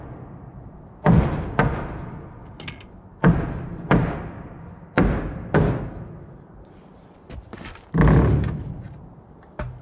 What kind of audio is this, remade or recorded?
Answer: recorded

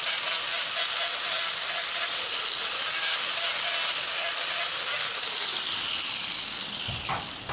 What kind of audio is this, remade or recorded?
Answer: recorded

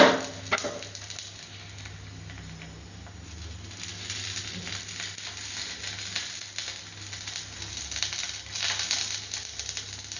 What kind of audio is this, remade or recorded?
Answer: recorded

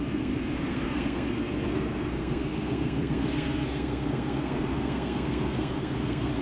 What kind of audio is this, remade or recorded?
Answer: remade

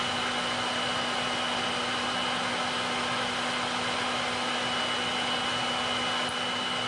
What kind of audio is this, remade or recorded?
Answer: recorded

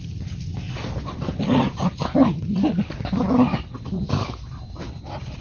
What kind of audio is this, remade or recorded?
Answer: remade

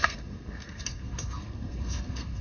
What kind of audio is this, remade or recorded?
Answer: remade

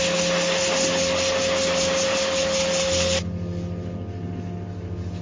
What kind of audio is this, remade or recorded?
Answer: recorded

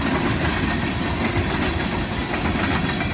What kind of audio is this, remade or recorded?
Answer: recorded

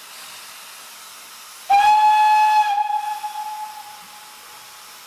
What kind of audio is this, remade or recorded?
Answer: recorded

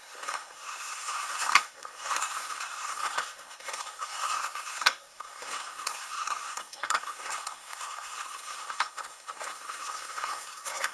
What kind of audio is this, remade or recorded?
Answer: remade